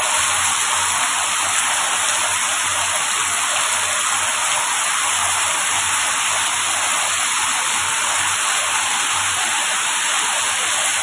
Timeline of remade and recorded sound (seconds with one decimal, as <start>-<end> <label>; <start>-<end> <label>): 0.0-5.2 recorded; 5.2-10.3 remade; 10.3-11.0 recorded